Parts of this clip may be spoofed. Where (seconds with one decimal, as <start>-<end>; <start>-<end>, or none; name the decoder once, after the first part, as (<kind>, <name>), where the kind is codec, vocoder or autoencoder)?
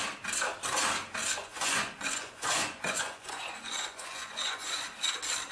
1.4-4.7 (vocoder, Vocos)